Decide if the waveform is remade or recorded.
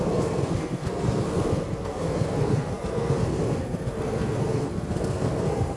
remade